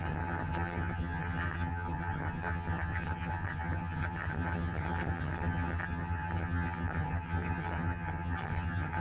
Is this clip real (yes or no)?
no